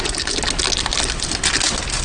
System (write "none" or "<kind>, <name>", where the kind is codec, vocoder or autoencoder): none